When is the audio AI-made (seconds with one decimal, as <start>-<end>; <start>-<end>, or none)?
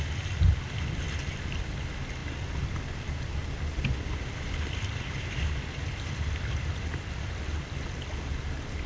none